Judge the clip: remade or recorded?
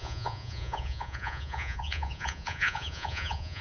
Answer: remade